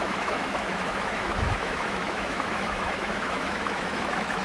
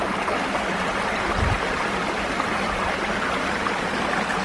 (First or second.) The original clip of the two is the second